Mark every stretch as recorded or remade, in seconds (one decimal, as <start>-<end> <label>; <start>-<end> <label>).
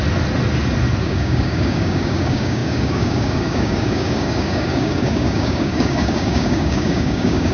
0.0-1.0 recorded; 1.0-7.5 remade